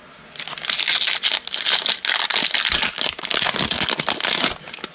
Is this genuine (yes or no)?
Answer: yes